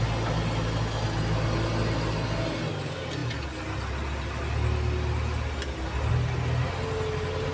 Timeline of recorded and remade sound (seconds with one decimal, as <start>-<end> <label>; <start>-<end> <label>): 0.0-7.5 recorded